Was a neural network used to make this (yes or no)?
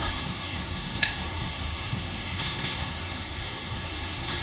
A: yes